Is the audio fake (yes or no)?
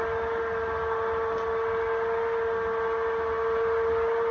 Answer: no